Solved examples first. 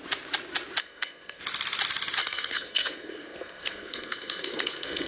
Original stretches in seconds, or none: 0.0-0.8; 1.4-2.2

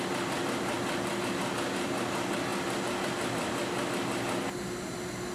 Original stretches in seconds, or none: 0.0-5.3